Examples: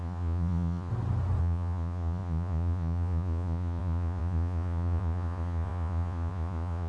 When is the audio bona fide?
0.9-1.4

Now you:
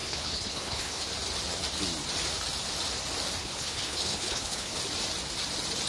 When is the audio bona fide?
1.0-3.4; 4.8-5.9

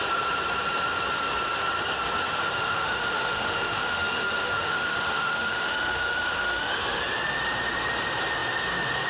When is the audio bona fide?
0.0-2.5; 7.0-9.1

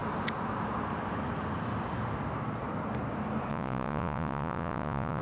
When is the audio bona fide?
0.0-3.5

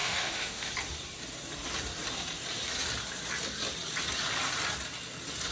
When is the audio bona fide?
0.7-5.5